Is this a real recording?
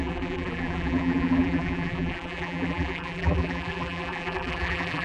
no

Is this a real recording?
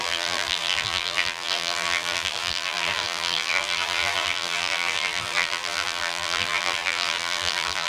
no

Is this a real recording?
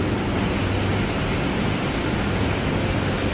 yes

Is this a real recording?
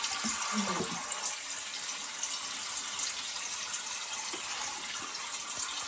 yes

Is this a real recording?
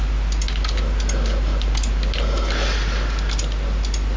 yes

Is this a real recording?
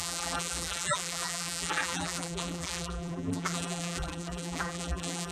no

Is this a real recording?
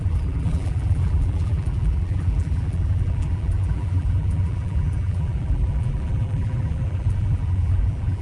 no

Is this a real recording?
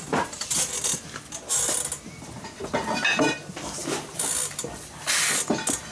yes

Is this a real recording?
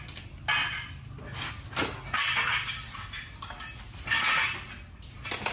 yes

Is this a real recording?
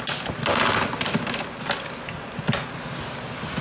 yes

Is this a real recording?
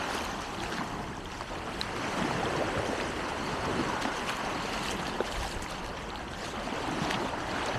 no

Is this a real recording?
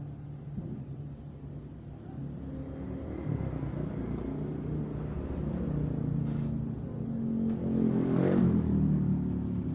yes